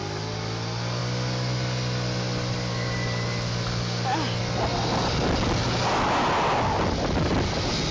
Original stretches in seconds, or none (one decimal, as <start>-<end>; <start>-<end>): 0.0-7.9